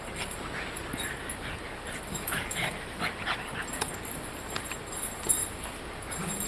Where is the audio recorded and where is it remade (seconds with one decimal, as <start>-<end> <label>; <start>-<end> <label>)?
0.0-2.1 recorded; 2.1-3.0 remade; 3.0-6.5 recorded